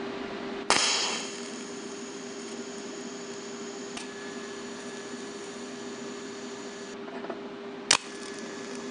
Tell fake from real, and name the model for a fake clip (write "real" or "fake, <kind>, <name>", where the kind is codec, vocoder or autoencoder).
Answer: real